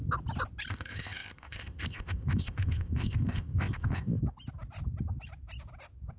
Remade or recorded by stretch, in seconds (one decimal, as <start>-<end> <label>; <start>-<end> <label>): 0.0-0.7 recorded; 0.7-4.2 remade; 4.2-6.2 recorded